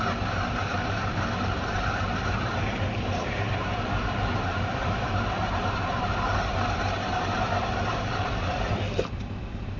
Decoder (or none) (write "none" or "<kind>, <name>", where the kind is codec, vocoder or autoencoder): vocoder, BigVGAN v2